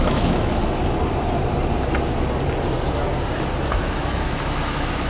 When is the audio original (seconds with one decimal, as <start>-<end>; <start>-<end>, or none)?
0.6-3.7